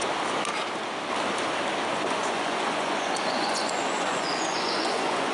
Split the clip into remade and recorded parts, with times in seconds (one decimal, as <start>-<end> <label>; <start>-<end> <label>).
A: 0.0-1.9 recorded; 1.9-5.3 remade